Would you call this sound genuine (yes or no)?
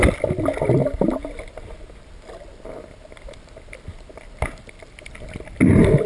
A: yes